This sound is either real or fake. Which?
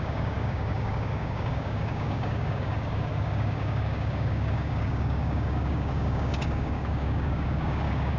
fake